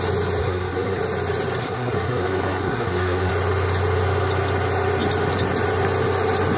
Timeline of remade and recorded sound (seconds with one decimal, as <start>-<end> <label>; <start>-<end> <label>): 0.0-0.4 recorded; 0.4-1.0 remade; 1.0-1.6 recorded; 1.6-3.3 remade; 3.3-6.6 recorded